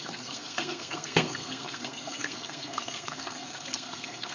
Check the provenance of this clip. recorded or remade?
remade